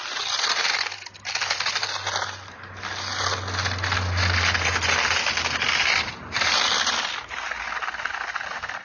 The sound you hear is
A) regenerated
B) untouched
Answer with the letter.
B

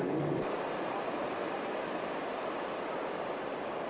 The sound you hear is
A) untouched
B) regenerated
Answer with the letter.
A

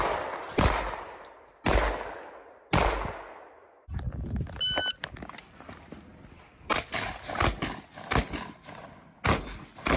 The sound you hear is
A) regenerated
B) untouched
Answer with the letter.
B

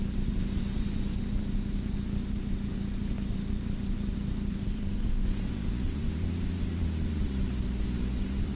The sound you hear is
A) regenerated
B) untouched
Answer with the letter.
A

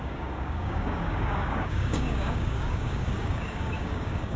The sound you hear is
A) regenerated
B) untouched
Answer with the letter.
A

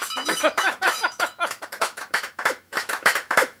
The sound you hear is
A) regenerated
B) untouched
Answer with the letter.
A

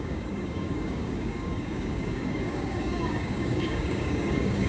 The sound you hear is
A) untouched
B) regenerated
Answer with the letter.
B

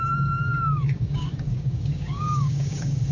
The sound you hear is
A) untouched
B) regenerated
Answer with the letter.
B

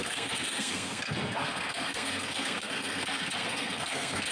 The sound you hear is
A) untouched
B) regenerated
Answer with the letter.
B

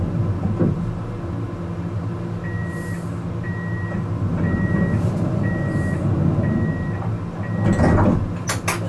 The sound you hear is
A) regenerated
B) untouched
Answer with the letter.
B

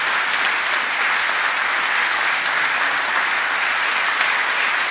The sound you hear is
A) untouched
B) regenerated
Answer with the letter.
A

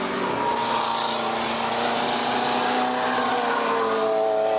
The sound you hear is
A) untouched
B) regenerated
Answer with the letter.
A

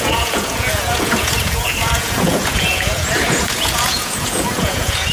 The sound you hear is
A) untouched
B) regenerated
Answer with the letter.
B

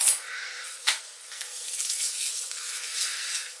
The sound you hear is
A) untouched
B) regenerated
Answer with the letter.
B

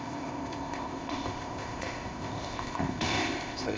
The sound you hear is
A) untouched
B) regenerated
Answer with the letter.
B